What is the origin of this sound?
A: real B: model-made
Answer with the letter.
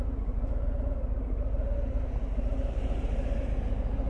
A